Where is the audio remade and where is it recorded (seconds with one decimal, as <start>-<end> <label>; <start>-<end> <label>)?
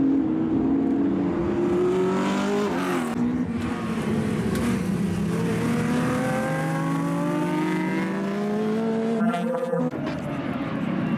0.0-9.2 recorded; 9.2-9.8 remade; 9.8-11.2 recorded